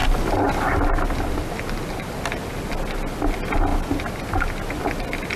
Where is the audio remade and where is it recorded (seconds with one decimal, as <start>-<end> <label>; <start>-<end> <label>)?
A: 0.0-5.4 recorded